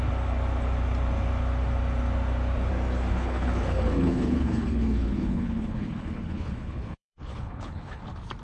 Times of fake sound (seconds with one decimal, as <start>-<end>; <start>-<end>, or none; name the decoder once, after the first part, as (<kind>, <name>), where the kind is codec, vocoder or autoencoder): 3.1-8.0 (codec, HILCodec)